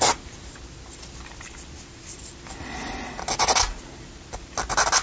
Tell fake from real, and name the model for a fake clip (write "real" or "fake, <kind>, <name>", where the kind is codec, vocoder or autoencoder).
real